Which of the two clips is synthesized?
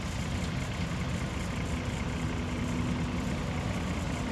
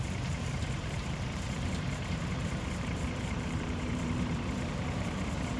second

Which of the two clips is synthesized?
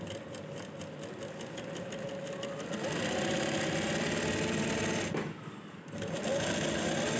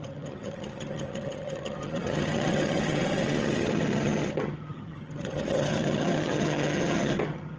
second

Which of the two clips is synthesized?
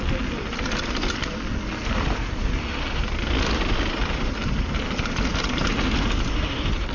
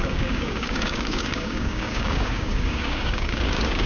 second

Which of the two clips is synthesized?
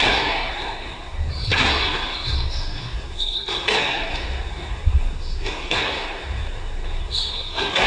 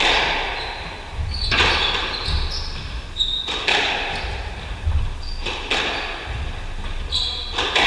first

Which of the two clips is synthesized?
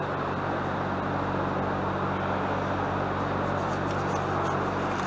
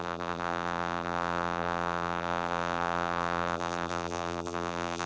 second